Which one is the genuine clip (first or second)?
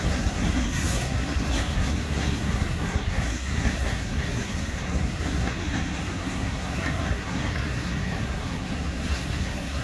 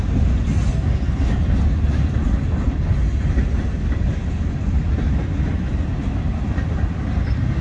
second